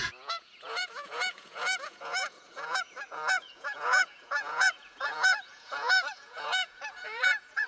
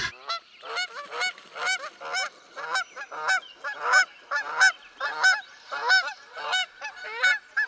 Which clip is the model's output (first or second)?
first